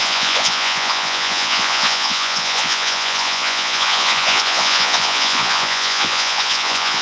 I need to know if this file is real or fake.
fake